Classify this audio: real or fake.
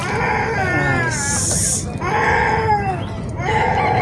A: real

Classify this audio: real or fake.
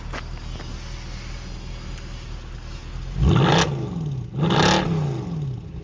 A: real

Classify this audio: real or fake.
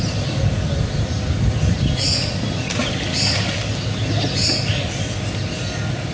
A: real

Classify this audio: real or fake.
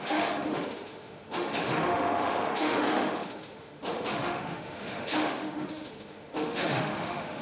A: fake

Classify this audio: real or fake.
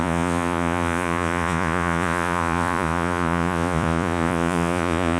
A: fake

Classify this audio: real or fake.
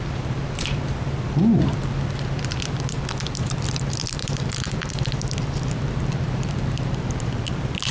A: fake